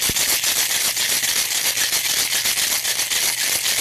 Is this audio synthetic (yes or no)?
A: no